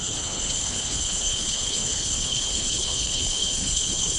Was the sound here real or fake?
fake